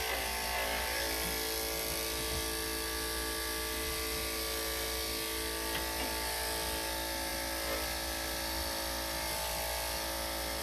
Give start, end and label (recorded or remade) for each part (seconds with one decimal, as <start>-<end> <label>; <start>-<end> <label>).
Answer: 0.0-10.6 recorded